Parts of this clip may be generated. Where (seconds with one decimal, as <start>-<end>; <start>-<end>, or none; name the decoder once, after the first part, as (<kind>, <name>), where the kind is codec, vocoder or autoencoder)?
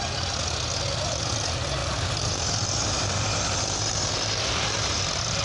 1.8-5.0 (vocoder, BigVGAN v2)